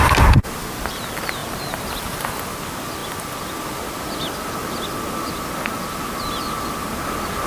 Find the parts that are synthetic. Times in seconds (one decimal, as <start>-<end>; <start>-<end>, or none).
1.4-2.3